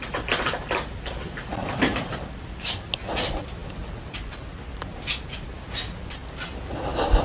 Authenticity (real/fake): real